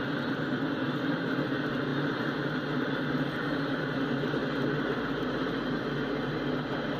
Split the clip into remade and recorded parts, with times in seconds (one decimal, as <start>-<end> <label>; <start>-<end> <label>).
0.0-7.0 recorded